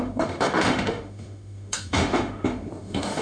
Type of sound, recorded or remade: remade